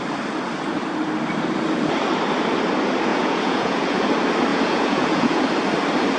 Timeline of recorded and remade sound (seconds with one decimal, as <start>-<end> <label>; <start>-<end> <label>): 0.0-3.1 recorded; 3.1-4.1 remade; 4.1-4.5 recorded; 4.5-5.4 remade; 5.4-6.2 recorded